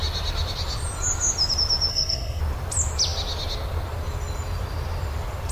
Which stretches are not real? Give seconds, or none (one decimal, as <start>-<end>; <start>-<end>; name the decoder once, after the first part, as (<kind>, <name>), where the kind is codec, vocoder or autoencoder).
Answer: 1.9-2.4 (codec, SNAC)